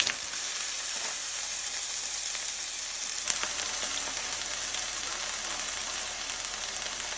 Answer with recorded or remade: recorded